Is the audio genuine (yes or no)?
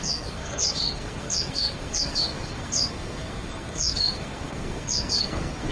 no